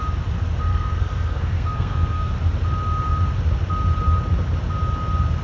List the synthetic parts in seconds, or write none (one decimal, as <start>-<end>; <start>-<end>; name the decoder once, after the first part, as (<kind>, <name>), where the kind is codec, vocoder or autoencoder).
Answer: 0.7-2.3 (codec, SNAC)